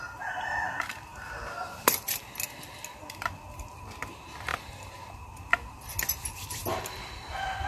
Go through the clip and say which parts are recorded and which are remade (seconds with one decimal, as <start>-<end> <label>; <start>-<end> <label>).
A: 0.0-4.5 recorded; 4.5-5.3 remade; 5.3-7.7 recorded